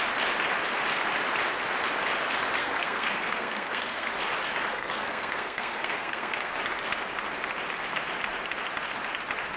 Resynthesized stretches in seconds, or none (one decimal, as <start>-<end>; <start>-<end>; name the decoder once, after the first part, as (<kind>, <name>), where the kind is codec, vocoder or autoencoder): 2.6-4.1 (codec, SNAC); 4.7-6.5